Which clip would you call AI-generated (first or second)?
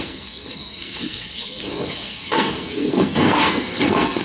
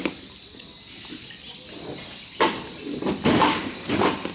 first